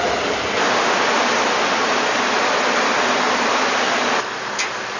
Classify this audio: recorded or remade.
recorded